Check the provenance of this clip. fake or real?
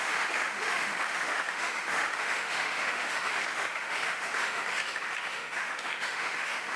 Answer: fake